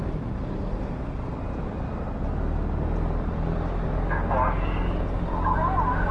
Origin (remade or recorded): recorded